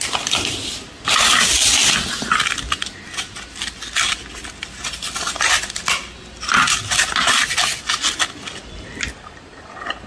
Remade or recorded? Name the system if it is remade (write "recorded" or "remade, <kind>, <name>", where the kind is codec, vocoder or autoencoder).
recorded